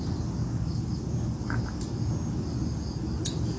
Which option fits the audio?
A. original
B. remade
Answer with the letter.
A